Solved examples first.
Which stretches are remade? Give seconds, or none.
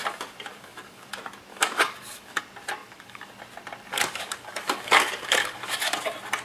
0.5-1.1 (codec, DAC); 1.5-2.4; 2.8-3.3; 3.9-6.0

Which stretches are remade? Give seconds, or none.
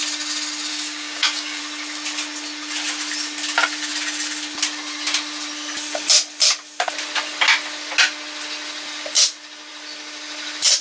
0.7-1.6 (codec, DAC)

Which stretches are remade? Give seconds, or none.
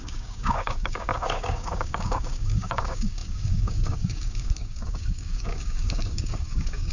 0.0-6.9 (codec, DAC)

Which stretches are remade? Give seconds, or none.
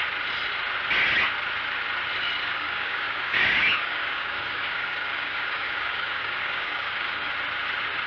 2.4-7.3 (codec, DAC)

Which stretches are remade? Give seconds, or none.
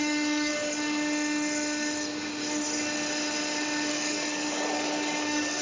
0.0-0.5 (codec, DAC); 3.9-5.6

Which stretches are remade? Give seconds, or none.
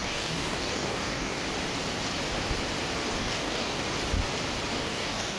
0.0-1.4 (codec, DAC); 3.2-3.8; 4.7-5.4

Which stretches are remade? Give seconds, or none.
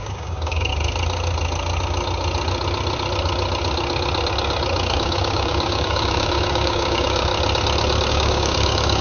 0.0-0.7 (codec, DAC); 4.9-7.3; 8.1-9.0